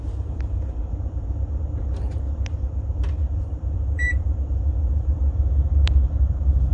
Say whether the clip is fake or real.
fake